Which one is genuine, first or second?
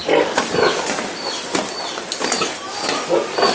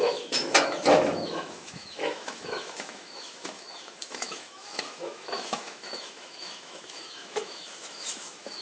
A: first